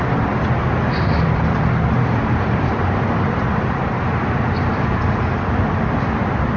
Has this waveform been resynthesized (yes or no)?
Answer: yes